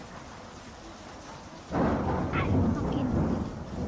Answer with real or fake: real